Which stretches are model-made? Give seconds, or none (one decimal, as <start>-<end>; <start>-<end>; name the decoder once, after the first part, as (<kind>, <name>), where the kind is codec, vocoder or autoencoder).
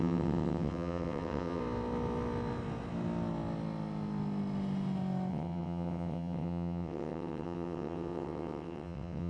0.0-1.6 (vocoder, WaveNeXt); 5.3-9.3